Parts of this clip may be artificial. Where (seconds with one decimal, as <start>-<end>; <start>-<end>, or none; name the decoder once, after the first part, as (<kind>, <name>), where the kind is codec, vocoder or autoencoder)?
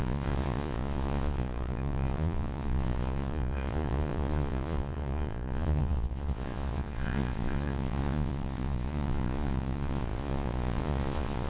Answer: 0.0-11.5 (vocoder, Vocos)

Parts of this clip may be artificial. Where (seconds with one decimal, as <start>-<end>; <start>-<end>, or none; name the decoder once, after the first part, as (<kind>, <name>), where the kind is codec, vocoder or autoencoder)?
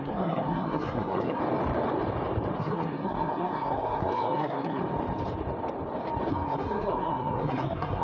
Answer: 0.0-1.4 (codec, SNAC); 2.6-4.8; 6.3-8.0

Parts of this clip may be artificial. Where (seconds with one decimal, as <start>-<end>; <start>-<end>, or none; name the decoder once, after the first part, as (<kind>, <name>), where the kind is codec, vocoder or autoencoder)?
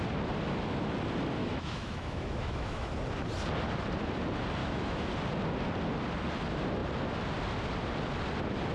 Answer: 1.4-2.9 (autoencoder, DAC-VAE); 4.6-5.1